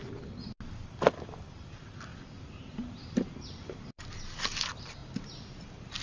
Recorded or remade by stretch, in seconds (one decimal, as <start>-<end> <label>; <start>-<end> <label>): 0.0-2.1 recorded; 2.1-4.0 remade; 4.0-5.0 recorded; 5.0-6.0 remade

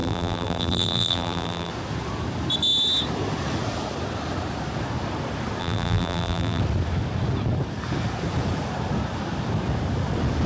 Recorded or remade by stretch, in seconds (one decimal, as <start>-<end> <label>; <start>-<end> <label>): 0.0-1.7 remade; 1.7-5.6 recorded; 5.6-6.6 remade; 6.6-10.5 recorded

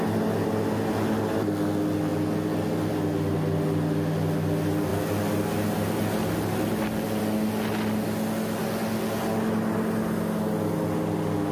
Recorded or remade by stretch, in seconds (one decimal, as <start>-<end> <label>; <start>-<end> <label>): 0.0-11.5 recorded